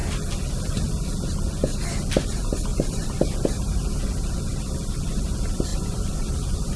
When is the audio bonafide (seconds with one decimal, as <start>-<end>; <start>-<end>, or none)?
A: 0.0-2.7; 4.0-5.7